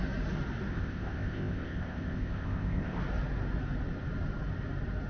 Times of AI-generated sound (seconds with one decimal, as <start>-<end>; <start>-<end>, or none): 0.7-3.0